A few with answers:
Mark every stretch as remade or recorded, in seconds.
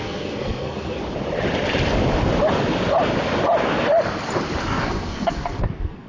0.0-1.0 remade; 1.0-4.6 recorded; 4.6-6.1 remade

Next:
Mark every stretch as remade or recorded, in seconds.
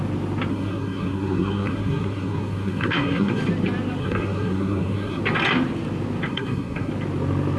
0.0-0.5 recorded; 0.5-3.4 remade; 3.4-4.0 recorded; 4.0-5.2 remade; 5.2-6.3 recorded; 6.3-6.9 remade; 6.9-7.6 recorded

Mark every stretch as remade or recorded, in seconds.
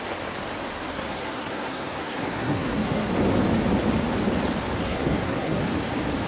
0.0-0.9 recorded; 0.9-3.1 remade; 3.1-4.8 recorded; 4.8-5.6 remade; 5.6-6.3 recorded